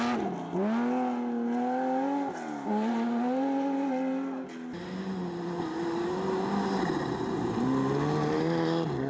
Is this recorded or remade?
recorded